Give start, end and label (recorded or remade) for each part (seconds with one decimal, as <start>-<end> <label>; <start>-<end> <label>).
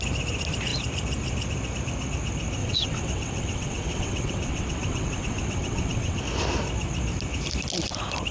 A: 0.0-2.6 recorded; 2.6-6.2 remade; 6.2-8.3 recorded